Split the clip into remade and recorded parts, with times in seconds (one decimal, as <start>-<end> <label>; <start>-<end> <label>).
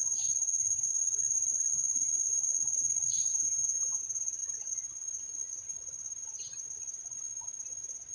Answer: 0.0-3.3 recorded; 3.3-4.0 remade; 4.0-8.1 recorded